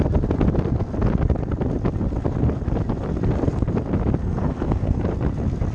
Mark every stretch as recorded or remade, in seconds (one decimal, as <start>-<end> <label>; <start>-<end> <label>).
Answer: 0.0-4.2 recorded; 4.2-5.0 remade; 5.0-5.7 recorded